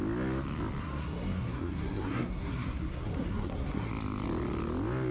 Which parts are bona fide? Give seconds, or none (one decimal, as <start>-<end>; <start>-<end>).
0.0-0.8; 3.9-5.1